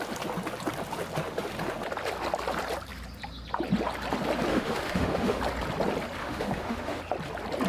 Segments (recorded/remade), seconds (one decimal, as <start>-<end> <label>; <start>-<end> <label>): 0.0-4.5 recorded; 4.5-5.4 remade; 5.4-6.2 recorded; 6.2-7.0 remade; 7.0-7.7 recorded